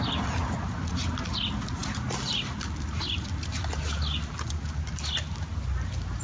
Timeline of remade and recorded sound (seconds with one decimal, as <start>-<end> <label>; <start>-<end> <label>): 0.0-6.2 recorded